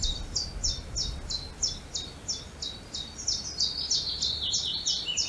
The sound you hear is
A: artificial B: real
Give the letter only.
B